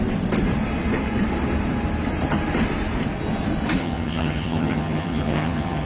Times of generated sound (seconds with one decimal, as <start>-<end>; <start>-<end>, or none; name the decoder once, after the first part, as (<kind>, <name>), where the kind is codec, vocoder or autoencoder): 3.8-5.9 (vocoder, HiFi-GAN)